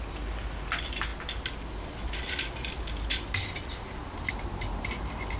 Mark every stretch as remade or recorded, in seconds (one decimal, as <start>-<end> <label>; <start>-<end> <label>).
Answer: 0.0-5.4 recorded